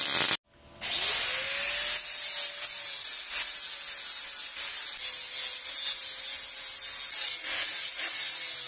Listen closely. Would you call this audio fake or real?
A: real